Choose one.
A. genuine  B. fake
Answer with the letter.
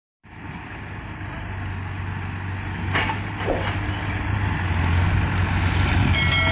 A